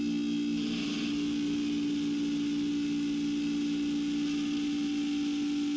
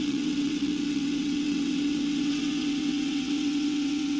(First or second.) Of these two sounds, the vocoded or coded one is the second